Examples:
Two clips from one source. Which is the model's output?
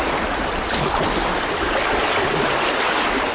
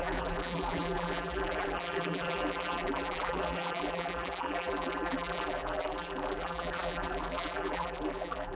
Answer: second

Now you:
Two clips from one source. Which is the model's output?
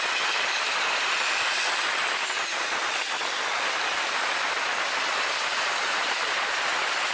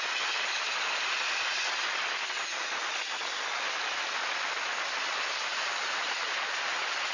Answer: first